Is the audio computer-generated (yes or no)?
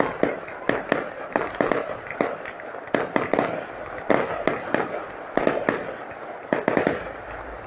no